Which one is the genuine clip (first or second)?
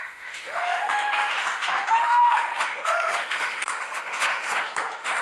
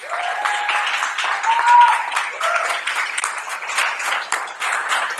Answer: second